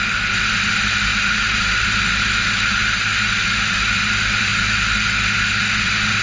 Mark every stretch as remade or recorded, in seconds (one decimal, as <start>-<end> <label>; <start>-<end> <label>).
0.0-1.1 recorded; 1.1-1.9 remade; 1.9-6.2 recorded